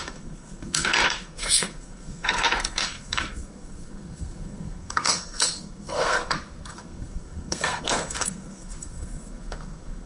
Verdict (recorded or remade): remade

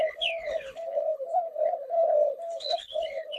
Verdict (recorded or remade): remade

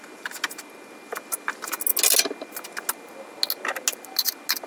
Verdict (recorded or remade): recorded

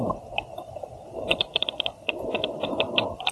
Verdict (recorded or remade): remade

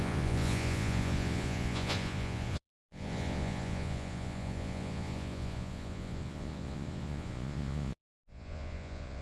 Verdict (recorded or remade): remade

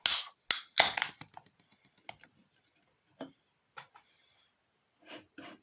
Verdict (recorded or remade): recorded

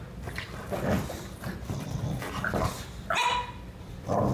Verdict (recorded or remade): recorded